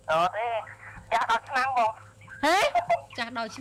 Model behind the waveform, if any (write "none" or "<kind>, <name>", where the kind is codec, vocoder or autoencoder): autoencoder, DAC-VAE